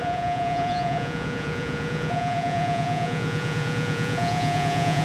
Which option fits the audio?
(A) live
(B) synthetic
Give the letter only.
B